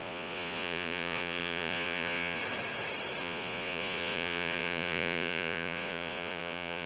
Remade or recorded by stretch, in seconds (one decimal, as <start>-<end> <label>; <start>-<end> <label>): 0.0-2.4 remade; 2.4-3.2 recorded; 3.2-6.9 remade